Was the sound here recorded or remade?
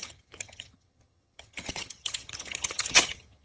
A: remade